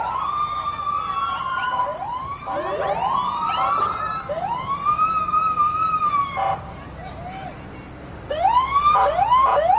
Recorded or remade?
remade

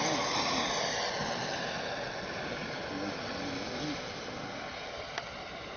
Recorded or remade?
recorded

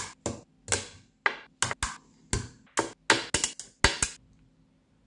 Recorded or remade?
recorded